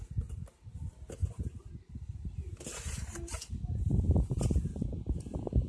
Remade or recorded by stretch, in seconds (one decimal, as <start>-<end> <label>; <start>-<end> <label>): 0.0-1.2 recorded; 1.2-4.6 remade; 4.6-5.7 recorded